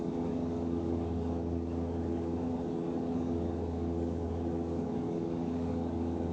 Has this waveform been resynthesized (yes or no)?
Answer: yes